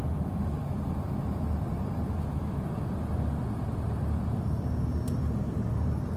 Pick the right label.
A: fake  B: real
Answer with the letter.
B